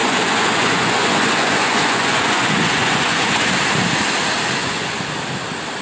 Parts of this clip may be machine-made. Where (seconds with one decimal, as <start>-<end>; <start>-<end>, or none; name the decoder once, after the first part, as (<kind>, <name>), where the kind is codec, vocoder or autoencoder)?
0.0-3.5 (vocoder, Vocos); 4.6-5.1